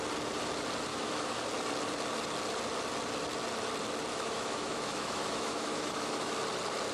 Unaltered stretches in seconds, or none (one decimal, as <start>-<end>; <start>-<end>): 0.0-0.9; 1.4-4.1; 6.3-6.9